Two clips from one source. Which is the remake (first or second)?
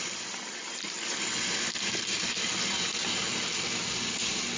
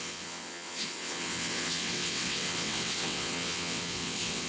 second